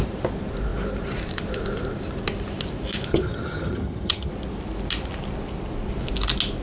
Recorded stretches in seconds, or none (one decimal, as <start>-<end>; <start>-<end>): 0.0-3.1; 4.3-6.6